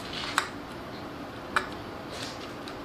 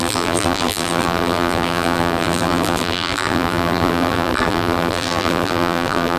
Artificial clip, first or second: second